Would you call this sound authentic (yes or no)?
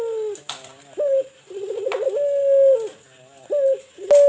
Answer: yes